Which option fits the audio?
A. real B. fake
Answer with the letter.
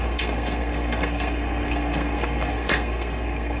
B